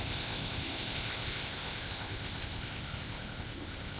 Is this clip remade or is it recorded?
remade